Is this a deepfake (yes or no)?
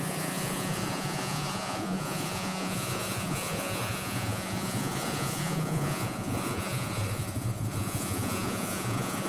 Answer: yes